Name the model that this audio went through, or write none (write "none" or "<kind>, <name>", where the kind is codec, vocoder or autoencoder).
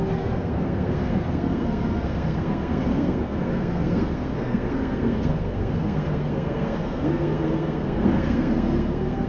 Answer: codec, SNAC